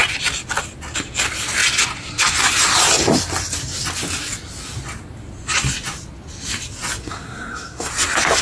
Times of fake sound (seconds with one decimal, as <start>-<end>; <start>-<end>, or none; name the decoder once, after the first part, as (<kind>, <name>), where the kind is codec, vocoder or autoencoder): 7.0-7.9 (codec, SNAC)